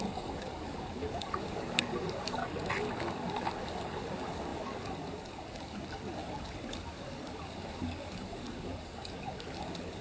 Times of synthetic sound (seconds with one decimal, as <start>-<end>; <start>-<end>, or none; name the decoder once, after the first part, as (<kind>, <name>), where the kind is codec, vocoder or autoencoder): 0.0-2.4 (codec, DAC); 2.9-10.0